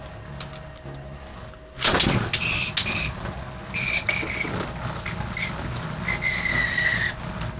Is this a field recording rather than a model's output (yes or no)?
yes